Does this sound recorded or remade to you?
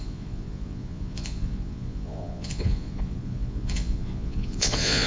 remade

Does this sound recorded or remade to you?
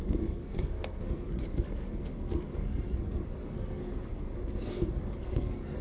remade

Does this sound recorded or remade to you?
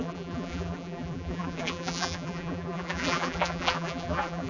remade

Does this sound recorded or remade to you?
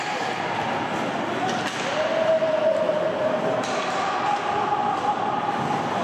remade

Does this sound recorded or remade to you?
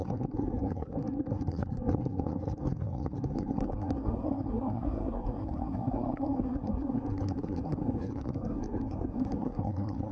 remade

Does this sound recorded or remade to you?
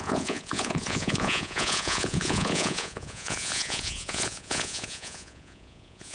remade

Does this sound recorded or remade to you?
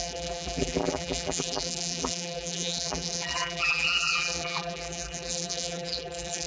remade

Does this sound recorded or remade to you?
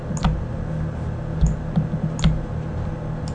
recorded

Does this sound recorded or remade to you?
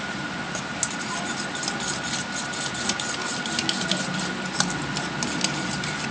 recorded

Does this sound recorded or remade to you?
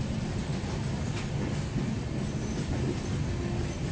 recorded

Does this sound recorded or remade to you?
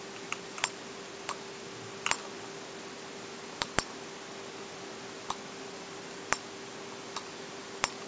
recorded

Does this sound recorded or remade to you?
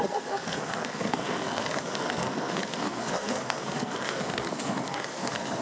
remade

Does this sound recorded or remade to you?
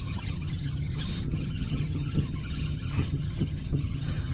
remade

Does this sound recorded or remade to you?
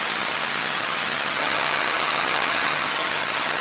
remade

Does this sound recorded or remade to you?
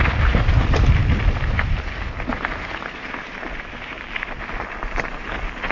recorded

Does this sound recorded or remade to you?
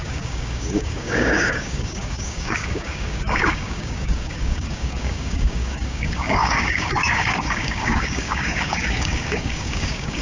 remade